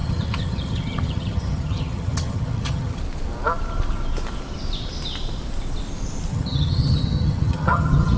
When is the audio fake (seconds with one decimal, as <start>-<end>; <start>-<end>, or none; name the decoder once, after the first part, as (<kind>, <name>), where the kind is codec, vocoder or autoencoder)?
0.0-3.0 (vocoder, HiFi-GAN); 6.3-8.2